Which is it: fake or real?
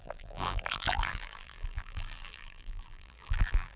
fake